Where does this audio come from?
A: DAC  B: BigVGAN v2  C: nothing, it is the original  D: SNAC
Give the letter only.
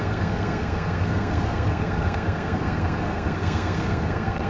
D